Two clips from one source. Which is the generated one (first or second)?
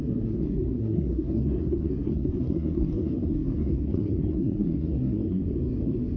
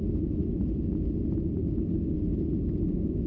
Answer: first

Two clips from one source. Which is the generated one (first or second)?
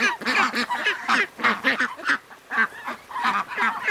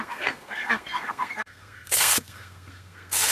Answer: second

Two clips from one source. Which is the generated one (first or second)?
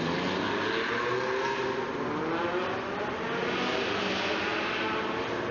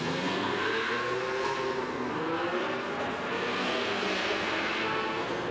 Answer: second